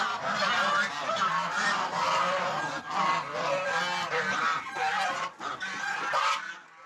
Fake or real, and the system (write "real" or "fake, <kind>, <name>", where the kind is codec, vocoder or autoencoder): real